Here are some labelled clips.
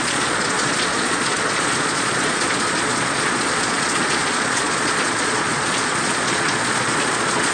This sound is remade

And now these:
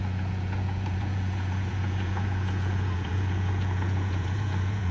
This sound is remade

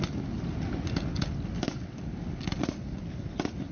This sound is recorded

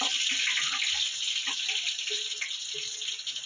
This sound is recorded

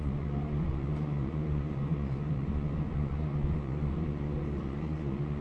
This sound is remade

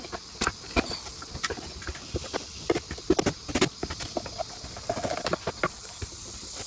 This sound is recorded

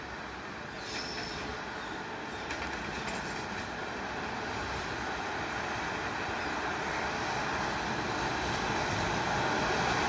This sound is recorded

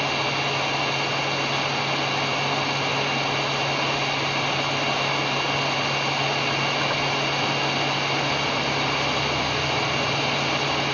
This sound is recorded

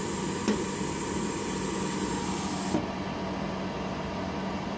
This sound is recorded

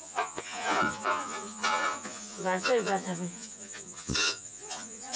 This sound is remade